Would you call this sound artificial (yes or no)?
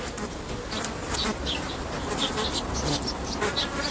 no